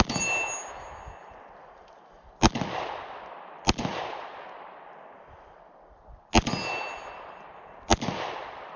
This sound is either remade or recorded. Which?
recorded